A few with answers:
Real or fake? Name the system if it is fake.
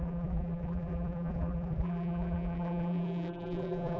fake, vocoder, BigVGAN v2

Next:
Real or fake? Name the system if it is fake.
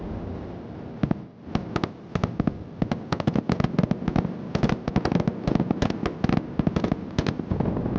real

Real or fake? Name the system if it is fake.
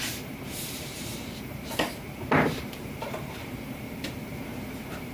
fake, vocoder, BigVGAN v2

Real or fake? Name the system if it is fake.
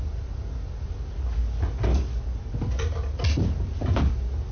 real